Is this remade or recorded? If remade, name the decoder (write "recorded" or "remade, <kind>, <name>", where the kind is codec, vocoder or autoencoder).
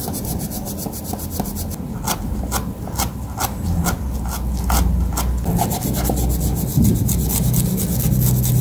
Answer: recorded